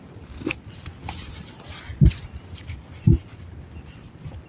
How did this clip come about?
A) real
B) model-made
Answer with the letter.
A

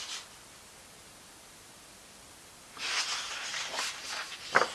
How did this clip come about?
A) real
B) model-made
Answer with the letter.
A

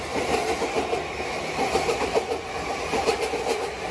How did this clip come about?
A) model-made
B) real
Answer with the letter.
B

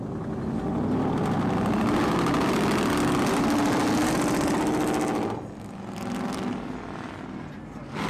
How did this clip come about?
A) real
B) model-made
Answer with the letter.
A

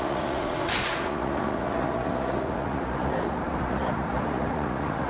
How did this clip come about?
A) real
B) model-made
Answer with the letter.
B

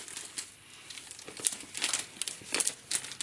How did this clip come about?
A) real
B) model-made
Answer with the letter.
A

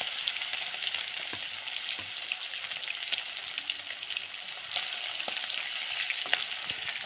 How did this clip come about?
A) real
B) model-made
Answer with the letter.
A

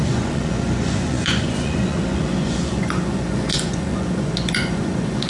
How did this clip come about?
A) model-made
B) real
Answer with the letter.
A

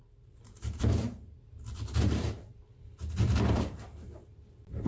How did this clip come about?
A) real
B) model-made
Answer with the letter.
B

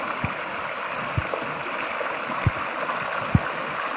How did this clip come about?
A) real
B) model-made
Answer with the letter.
A